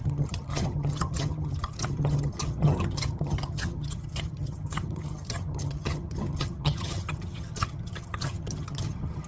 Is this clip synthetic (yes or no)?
yes